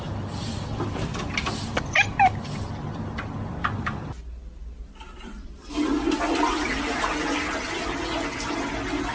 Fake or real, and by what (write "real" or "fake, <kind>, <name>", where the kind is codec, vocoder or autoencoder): real